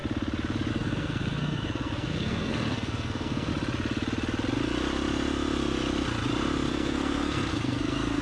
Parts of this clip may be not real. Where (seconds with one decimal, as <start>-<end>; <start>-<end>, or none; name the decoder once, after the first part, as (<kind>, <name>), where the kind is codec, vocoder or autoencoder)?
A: 0.7-3.5 (codec, SNAC); 6.7-8.2